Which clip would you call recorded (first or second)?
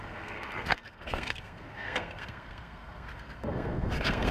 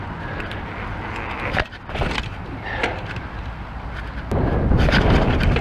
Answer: second